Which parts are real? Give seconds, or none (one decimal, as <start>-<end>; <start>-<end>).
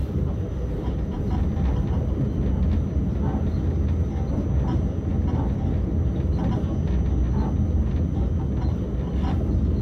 1.2-9.8